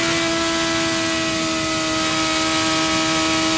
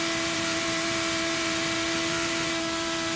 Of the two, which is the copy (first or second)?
second